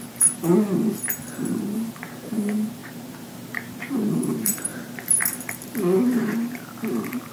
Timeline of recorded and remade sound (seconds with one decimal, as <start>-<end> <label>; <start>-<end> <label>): 0.0-0.5 remade; 0.5-1.6 recorded; 1.6-4.7 remade; 4.7-6.2 recorded; 6.2-7.3 remade